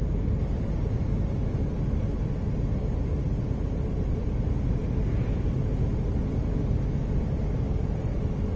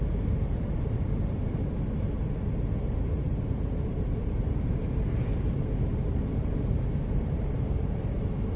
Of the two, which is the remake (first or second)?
second